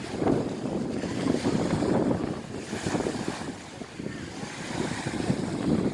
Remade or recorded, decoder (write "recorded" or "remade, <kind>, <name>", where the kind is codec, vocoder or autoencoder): recorded